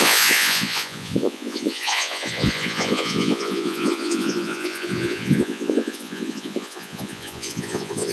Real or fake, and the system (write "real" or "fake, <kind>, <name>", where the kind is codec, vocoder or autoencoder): fake, vocoder, Vocos